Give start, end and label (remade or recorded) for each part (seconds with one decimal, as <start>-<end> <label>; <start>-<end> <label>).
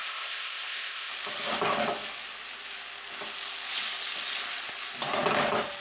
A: 0.0-1.1 remade; 1.1-5.8 recorded